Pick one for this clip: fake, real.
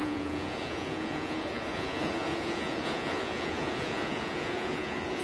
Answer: fake